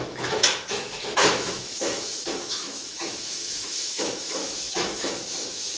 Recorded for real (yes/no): no